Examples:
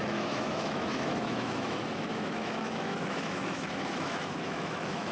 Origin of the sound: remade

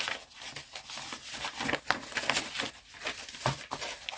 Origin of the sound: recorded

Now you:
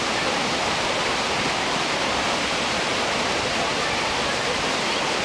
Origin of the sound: recorded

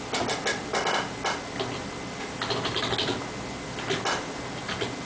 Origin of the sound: recorded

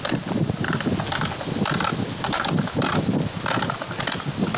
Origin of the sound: recorded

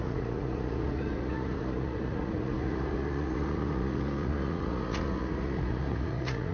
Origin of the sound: remade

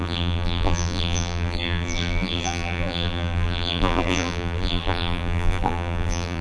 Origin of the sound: remade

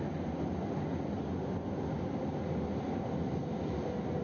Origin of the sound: recorded